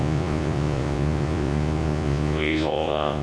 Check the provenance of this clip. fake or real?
fake